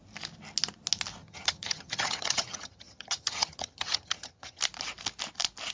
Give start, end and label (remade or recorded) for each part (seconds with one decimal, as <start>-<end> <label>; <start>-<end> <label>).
0.0-1.2 recorded; 1.2-4.6 remade; 4.6-5.7 recorded